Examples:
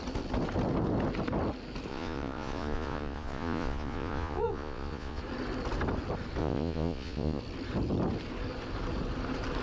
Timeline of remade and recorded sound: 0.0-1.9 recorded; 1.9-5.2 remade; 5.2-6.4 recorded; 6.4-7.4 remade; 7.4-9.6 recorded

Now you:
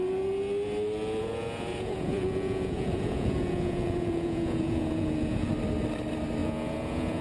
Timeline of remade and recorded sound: 0.0-1.2 recorded; 1.2-5.5 remade; 5.5-6.4 recorded; 6.4-7.2 remade

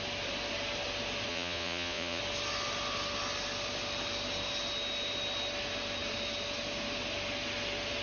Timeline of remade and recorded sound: 0.0-1.3 recorded; 1.3-2.2 remade; 2.2-8.0 recorded

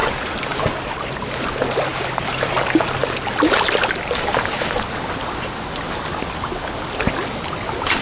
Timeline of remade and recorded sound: 0.0-8.0 recorded

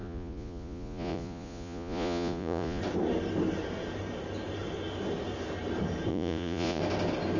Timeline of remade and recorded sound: 0.0-2.8 remade; 2.8-6.1 recorded; 6.1-6.8 remade; 6.8-7.4 recorded

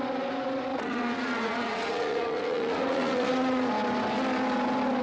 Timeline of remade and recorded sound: 0.0-0.7 recorded; 0.7-3.7 remade; 3.7-5.0 recorded